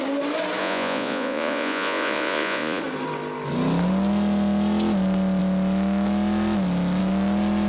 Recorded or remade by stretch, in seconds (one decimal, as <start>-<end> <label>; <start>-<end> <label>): 0.0-0.6 recorded; 0.6-2.8 remade; 2.8-7.7 recorded